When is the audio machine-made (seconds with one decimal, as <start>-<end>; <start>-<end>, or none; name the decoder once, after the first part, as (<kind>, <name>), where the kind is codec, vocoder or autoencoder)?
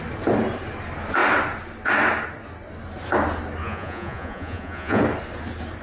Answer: 3.6-5.0 (vocoder, Vocos)